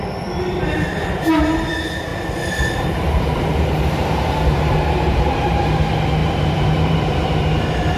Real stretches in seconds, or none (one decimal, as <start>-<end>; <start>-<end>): 0.0-2.1; 5.8-6.2; 7.4-8.0